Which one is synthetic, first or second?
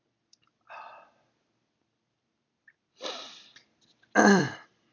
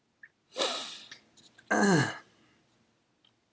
first